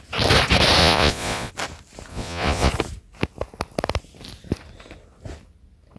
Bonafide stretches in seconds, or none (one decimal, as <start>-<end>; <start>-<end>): 0.0-0.8; 1.5-2.1; 2.7-6.0